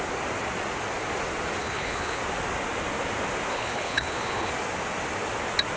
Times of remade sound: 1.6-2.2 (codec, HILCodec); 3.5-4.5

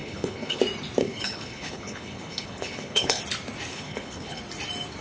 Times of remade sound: 0.0-0.6 (codec, HILCodec); 1.0-3.2; 3.7-4.4

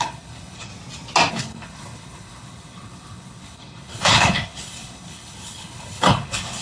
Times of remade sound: 0.0-0.7 (codec, HILCodec); 1.3-6.6